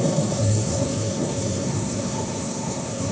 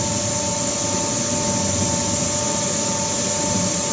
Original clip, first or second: second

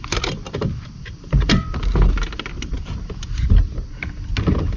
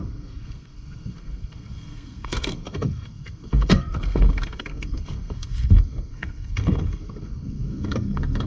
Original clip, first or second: first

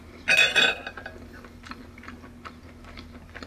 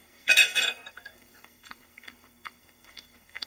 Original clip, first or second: first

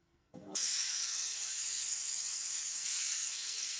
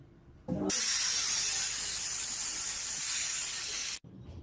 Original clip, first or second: second